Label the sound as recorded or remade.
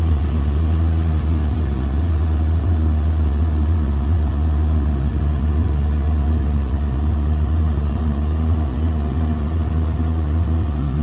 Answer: remade